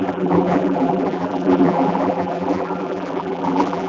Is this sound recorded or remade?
remade